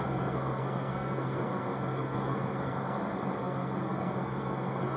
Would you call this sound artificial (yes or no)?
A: yes